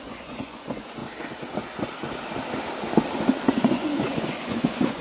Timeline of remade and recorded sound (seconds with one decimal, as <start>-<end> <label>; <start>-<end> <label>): 0.0-1.0 remade; 1.0-3.5 recorded; 3.5-5.0 remade